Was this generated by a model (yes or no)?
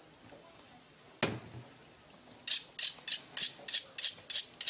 no